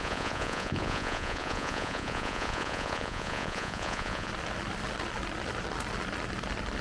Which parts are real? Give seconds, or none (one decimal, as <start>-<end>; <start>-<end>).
4.3-6.8